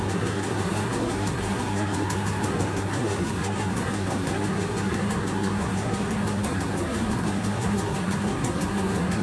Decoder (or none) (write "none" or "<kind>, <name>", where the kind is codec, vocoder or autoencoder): codec, SNAC